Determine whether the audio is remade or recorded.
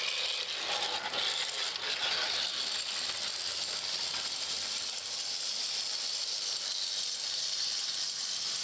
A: recorded